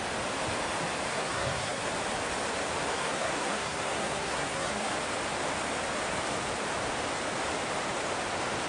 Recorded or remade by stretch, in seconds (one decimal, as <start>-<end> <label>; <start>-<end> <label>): 0.0-1.1 recorded; 1.1-1.8 remade; 1.8-2.9 recorded; 2.9-4.9 remade; 4.9-8.7 recorded